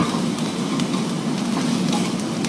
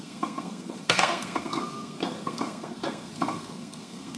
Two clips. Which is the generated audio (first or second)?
second